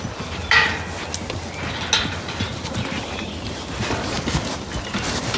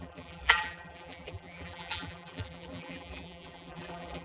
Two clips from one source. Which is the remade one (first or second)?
second